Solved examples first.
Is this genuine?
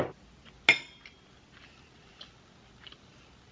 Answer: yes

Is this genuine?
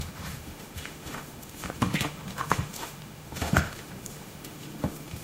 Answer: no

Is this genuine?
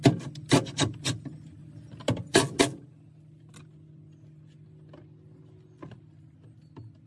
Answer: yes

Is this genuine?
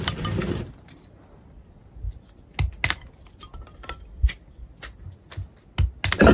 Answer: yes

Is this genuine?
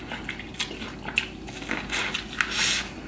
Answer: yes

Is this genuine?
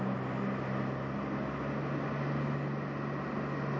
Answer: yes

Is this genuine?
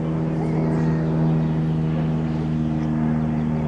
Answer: yes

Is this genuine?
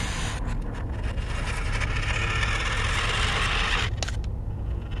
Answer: yes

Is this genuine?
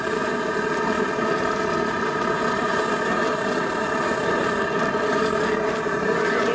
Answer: yes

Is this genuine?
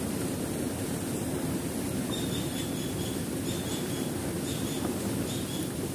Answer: yes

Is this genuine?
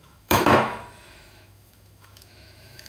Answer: no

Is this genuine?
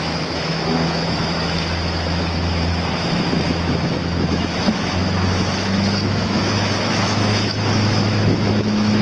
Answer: no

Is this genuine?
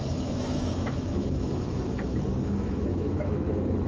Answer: no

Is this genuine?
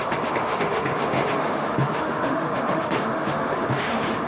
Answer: no